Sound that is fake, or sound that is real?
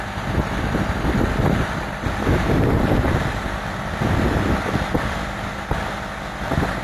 real